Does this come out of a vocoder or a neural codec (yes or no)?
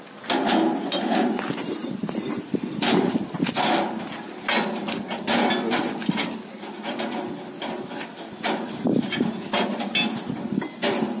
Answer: no